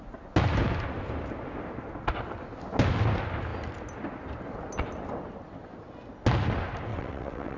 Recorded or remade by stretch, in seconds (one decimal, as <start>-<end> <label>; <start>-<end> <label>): 0.0-6.9 recorded; 6.9-7.6 remade